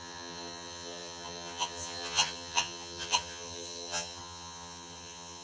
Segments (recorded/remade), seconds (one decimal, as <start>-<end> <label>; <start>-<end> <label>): 0.0-5.4 remade